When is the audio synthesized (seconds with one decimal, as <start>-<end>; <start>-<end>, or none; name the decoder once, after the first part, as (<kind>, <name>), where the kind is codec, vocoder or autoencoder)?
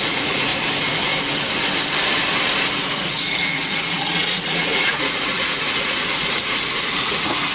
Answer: 0.0-0.5 (vocoder, Vocos); 2.9-7.5